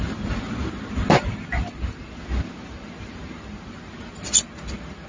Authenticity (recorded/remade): recorded